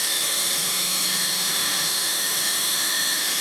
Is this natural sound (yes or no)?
no